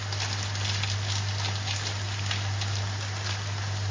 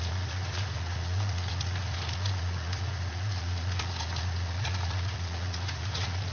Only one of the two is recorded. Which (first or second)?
first